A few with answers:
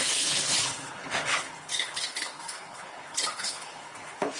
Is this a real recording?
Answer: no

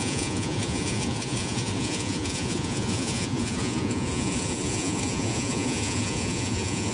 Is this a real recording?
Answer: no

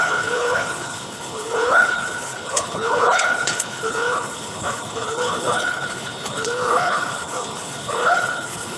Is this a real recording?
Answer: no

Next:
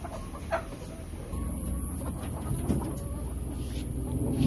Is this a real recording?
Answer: yes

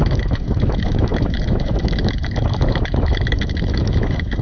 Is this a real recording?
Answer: no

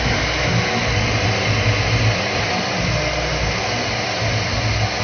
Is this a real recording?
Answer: yes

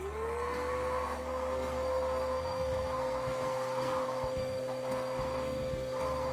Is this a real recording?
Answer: no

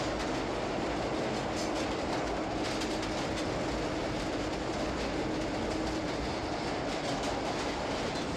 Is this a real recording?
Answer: yes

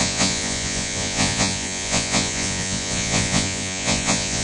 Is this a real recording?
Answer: no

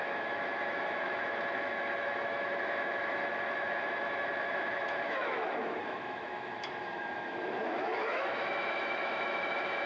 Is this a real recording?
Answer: no